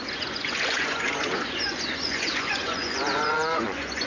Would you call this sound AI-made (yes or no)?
yes